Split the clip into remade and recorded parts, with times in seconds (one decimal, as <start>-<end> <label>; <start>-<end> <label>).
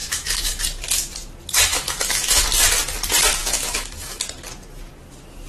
0.0-0.6 remade; 0.6-1.7 recorded; 1.7-2.4 remade; 2.4-3.4 recorded; 3.4-4.2 remade; 4.2-5.5 recorded